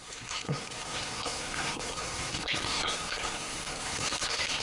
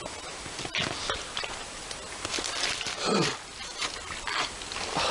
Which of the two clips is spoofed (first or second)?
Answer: first